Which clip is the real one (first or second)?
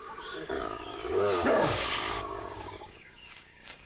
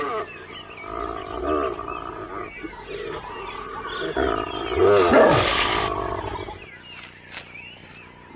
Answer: second